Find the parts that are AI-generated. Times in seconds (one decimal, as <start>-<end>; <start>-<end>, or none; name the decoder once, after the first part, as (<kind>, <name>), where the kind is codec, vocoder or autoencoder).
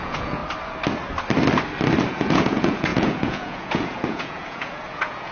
0.0-0.4 (vocoder, Vocos); 2.1-5.3